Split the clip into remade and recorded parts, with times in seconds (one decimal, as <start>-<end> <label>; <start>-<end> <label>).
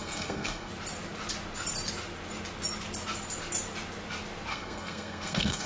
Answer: 0.0-0.7 remade; 0.7-4.5 recorded; 4.5-5.7 remade